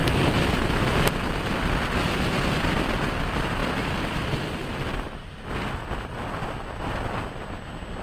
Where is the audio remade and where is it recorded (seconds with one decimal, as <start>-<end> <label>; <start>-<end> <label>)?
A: 0.0-3.6 recorded; 3.6-4.7 remade; 4.7-8.0 recorded